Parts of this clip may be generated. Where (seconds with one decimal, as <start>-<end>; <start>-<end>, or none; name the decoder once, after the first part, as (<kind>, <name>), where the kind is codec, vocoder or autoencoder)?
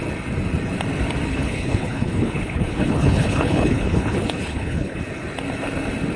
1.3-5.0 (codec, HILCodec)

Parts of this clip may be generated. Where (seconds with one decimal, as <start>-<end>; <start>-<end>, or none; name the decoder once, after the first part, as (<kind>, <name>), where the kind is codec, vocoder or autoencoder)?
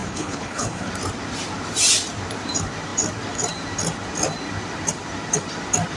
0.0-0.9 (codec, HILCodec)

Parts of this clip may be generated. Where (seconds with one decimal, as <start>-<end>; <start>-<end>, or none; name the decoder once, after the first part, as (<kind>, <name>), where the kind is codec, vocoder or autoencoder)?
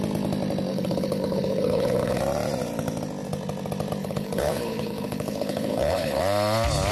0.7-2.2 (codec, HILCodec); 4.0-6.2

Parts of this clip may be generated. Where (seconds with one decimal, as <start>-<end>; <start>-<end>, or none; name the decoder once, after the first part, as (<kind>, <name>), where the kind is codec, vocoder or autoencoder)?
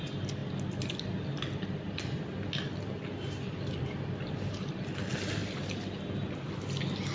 none